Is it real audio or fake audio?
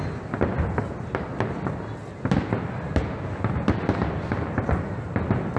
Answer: real